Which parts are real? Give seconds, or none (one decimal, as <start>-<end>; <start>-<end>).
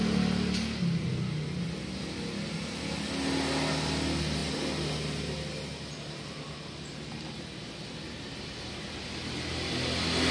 0.0-10.3